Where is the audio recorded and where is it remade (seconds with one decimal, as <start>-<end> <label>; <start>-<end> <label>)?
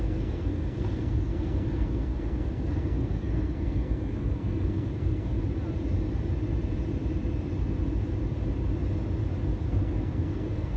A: 0.0-5.4 remade; 5.4-9.6 recorded; 9.6-10.8 remade